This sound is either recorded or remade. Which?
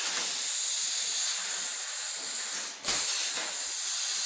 recorded